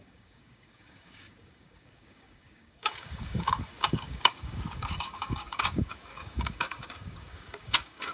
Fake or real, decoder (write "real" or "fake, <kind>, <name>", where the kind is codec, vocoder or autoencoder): fake, codec, DAC